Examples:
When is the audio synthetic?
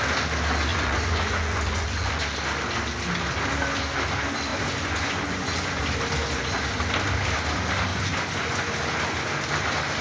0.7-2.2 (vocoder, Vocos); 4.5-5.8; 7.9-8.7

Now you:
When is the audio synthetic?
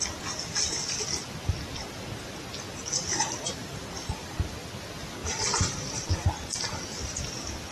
2.7-4.7 (vocoder, BigVGAN v2); 5.2-6.3